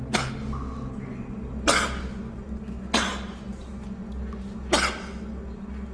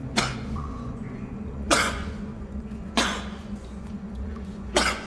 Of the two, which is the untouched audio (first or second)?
first